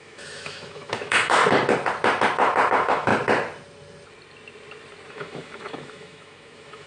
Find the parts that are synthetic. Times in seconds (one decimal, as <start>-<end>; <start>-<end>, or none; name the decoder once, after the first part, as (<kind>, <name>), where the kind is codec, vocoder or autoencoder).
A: 0.0-1.4 (autoencoder, DAC-VAE); 2.7-3.1; 5.1-6.9